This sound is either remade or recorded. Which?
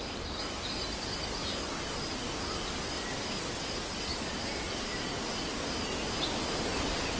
recorded